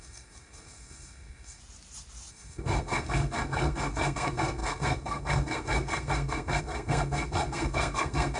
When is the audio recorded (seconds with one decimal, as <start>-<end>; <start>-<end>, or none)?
1.6-2.3